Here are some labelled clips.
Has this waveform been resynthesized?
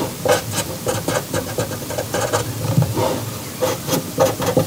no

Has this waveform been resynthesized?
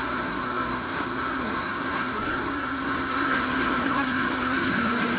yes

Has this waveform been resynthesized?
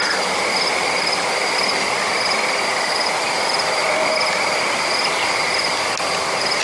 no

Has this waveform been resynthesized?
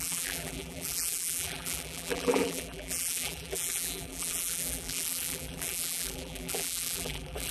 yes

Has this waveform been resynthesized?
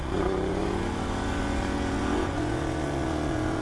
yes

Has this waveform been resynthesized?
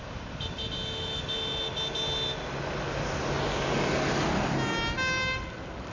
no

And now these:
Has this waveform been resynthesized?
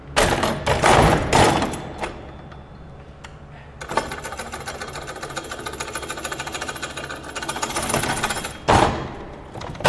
no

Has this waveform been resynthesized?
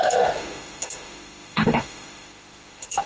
yes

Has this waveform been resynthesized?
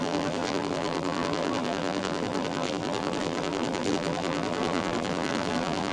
yes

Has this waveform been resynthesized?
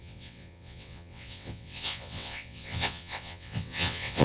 yes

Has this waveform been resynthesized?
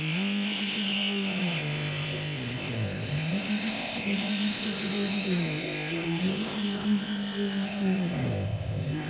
yes